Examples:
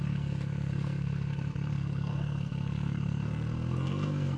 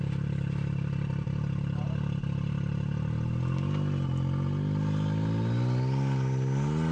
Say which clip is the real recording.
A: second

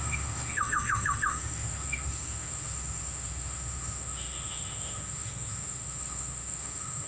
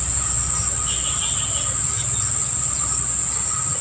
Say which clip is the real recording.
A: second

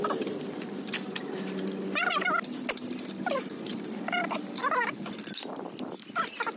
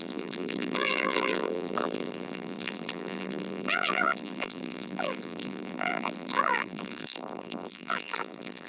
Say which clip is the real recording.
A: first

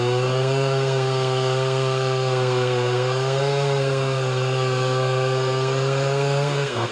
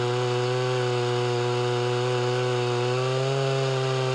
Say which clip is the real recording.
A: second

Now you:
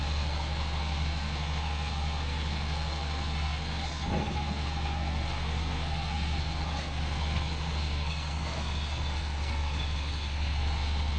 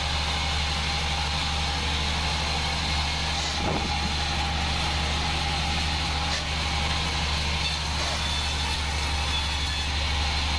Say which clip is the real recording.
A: second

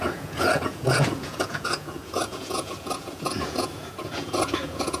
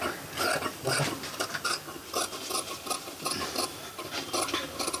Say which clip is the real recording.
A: second